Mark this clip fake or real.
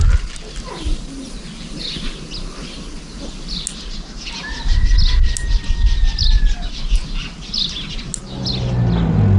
real